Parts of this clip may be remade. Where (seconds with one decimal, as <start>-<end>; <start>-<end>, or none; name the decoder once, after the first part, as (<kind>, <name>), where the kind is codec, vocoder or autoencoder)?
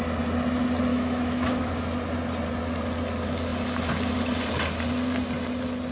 0.9-1.7 (autoencoder, DAC-VAE)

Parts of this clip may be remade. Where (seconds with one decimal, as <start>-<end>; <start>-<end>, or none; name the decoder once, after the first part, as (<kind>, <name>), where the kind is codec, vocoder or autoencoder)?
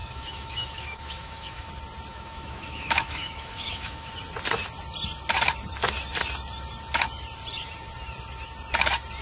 0.0-1.7 (autoencoder, DAC-VAE); 2.1-4.1